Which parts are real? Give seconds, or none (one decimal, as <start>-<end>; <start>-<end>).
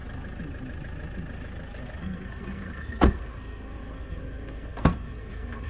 0.0-2.0